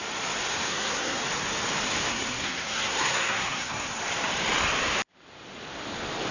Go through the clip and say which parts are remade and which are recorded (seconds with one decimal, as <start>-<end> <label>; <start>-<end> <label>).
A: 0.0-0.7 recorded; 0.7-1.2 remade; 1.2-2.1 recorded; 2.1-4.0 remade; 4.0-6.3 recorded